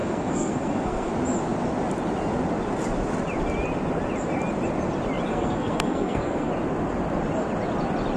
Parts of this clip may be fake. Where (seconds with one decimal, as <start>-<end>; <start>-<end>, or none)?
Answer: 0.0-1.1; 5.3-6.5